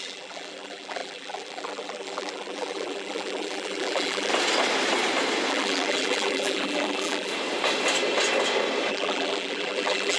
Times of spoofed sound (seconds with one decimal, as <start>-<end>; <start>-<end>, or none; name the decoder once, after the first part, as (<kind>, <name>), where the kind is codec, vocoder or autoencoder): 0.0-4.3 (vocoder, BigVGAN v2); 5.5-7.3; 8.9-10.2